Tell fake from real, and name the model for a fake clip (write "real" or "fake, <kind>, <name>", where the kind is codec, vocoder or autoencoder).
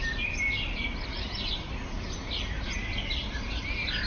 real